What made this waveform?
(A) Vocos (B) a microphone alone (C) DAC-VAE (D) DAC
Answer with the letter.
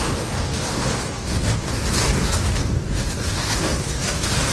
D